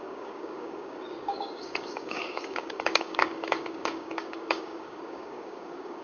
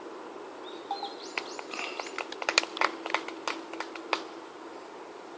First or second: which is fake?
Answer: first